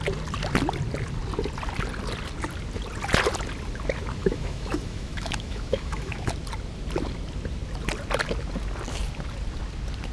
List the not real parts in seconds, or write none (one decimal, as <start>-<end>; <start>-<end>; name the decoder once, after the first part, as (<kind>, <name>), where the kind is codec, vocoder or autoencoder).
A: 4.2-6.3 (autoencoder, DAC-VAE)